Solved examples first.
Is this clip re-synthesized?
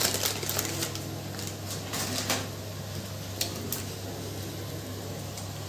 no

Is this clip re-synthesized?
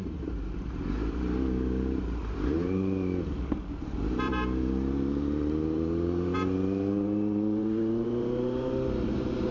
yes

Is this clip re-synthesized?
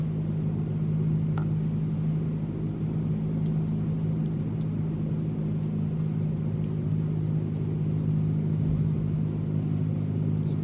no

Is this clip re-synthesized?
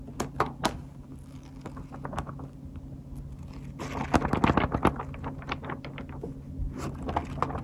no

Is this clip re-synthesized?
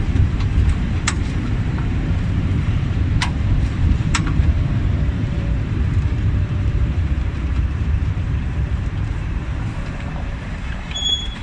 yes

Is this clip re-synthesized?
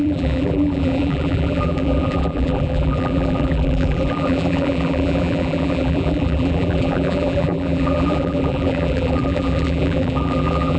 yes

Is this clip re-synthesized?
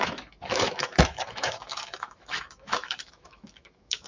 yes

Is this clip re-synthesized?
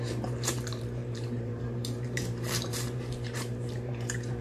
yes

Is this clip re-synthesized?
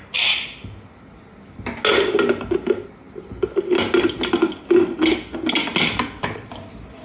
no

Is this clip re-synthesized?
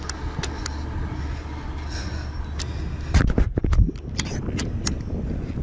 no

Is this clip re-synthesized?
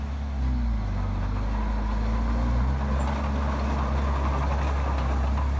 no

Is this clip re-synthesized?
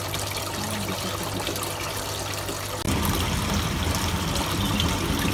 no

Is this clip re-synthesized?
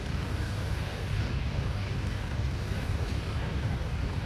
yes